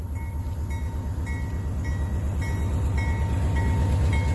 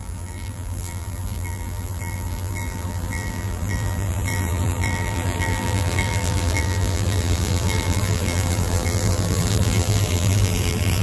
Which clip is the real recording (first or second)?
first